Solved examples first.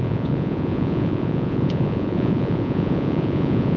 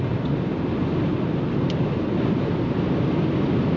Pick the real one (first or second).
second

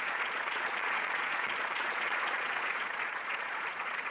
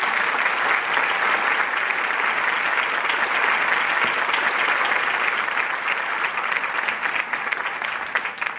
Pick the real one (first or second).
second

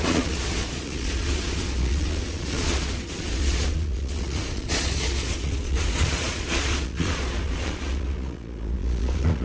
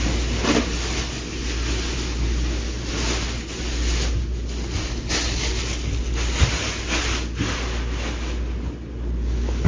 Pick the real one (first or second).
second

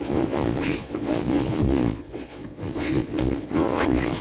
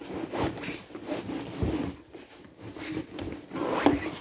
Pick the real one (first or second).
second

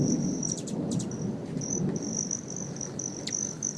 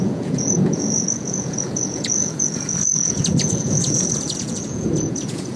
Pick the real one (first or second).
first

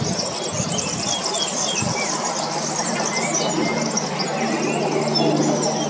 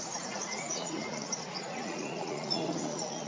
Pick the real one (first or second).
first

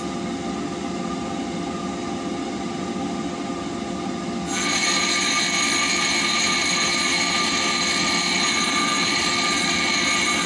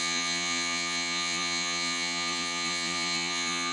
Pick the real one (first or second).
first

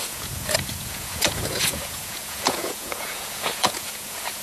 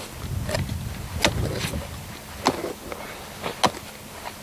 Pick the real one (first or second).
second